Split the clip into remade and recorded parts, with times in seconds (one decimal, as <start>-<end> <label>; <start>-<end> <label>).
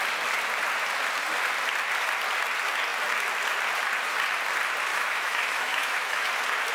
0.0-4.9 recorded; 4.9-6.3 remade; 6.3-6.7 recorded